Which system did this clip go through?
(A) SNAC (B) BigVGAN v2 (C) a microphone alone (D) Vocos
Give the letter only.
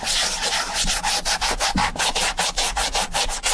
B